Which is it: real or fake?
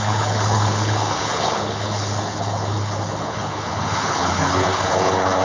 fake